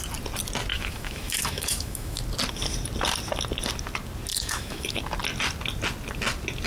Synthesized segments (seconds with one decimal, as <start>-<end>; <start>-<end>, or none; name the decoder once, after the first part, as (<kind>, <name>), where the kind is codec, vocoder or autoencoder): 0.7-2.2 (autoencoder, DAC-VAE); 4.3-5.0